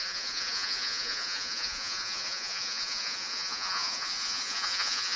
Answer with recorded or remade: remade